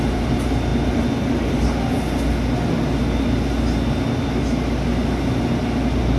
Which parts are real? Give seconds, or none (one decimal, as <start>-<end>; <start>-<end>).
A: 0.0-6.2